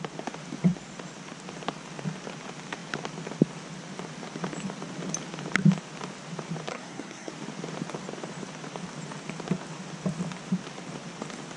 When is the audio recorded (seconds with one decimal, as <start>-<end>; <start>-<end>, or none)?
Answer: 0.0-6.7; 7.3-11.6